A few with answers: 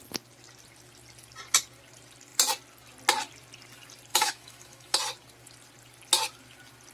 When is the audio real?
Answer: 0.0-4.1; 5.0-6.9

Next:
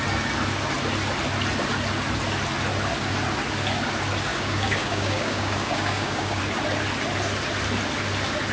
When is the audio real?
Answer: 0.0-4.3; 6.4-8.5

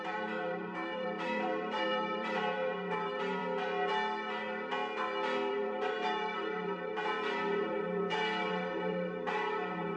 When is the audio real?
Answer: 3.4-5.5

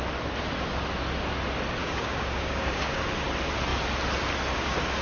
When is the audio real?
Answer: 0.0-1.8; 3.0-5.0

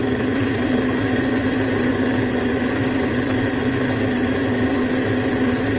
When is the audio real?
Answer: 0.0-5.8

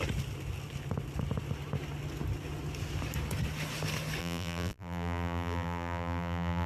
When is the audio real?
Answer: 0.0-4.2

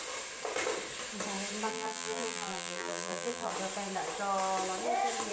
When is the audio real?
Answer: 0.0-1.7; 3.5-5.3